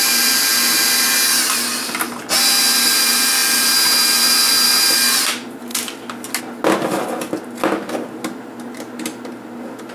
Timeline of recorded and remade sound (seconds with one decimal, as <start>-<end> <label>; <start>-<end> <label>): 0.0-9.9 recorded